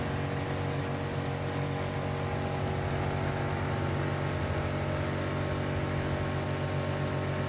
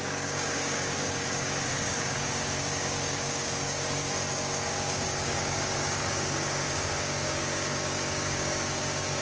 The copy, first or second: second